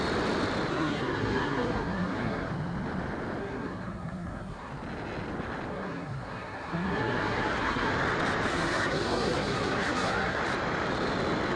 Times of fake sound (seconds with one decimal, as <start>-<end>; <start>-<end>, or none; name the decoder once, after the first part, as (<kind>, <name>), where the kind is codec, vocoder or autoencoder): 0.7-2.5 (codec, SNAC); 3.4-4.7; 5.7-7.9; 8.5-10.4